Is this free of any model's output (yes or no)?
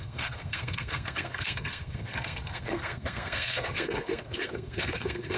no